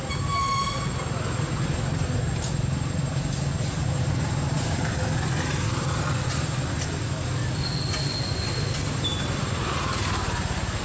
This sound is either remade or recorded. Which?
recorded